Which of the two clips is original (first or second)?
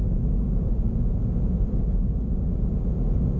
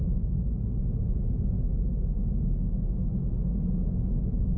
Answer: second